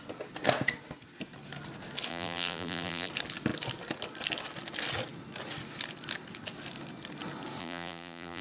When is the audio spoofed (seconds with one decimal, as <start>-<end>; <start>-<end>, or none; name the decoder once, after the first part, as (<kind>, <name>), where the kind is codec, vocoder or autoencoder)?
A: 2.1-3.1 (vocoder, BigVGAN v2); 7.6-8.4